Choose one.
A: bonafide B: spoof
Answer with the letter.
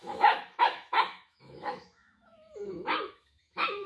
B